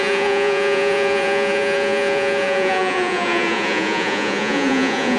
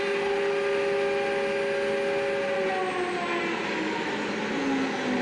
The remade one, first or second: first